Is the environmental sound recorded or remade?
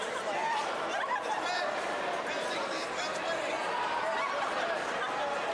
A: recorded